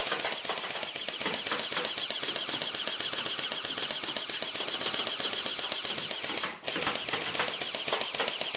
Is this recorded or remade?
recorded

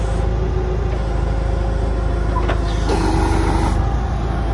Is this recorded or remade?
recorded